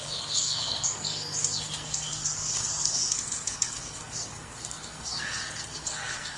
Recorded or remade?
remade